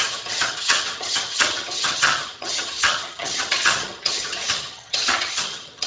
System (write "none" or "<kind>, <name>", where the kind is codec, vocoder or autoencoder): vocoder, HiFi-GAN